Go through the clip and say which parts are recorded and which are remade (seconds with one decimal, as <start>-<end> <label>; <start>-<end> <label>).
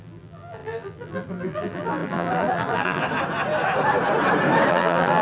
0.0-3.0 remade; 3.0-4.7 recorded; 4.7-5.2 remade